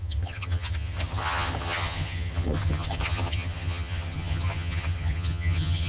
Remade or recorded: remade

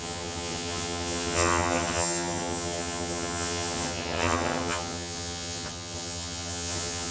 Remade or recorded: remade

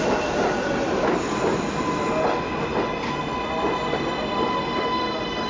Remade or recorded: recorded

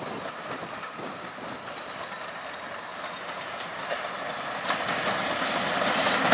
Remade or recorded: recorded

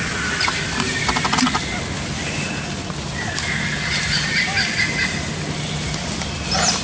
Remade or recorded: recorded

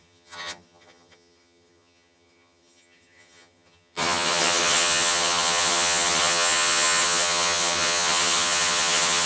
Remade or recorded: remade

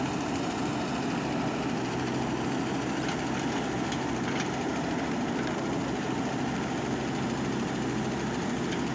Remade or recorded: recorded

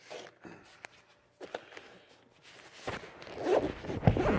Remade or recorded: recorded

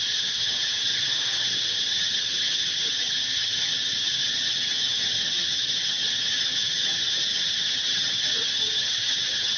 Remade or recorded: remade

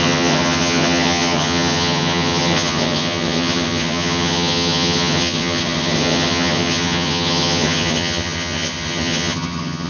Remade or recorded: remade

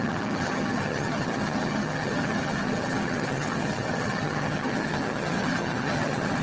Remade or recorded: remade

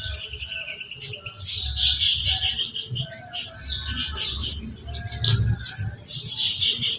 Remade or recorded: recorded